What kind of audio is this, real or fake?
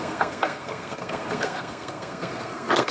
fake